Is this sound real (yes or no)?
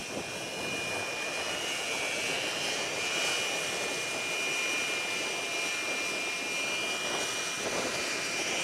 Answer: yes